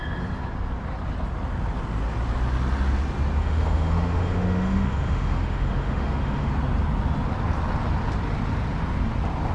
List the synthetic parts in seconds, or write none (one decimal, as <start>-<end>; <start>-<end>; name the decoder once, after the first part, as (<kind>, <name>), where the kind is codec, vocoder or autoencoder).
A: 3.4-6.5 (autoencoder, DAC-VAE)